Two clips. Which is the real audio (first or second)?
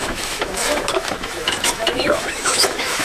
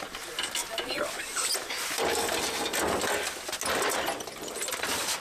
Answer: second